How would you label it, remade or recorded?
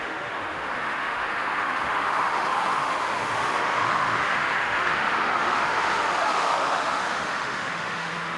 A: remade